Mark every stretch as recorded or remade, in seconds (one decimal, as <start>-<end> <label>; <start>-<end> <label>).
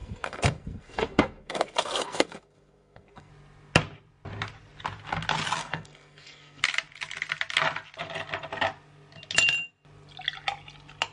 0.0-3.3 remade; 3.3-5.6 recorded; 5.6-6.6 remade; 6.6-11.1 recorded